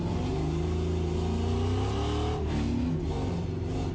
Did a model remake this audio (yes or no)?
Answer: no